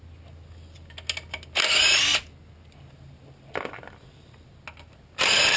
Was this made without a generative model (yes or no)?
yes